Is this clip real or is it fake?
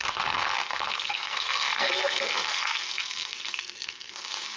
fake